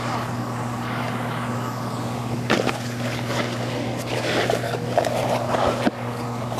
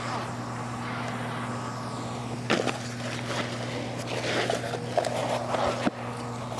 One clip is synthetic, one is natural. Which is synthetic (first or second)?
first